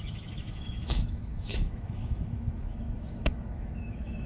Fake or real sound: fake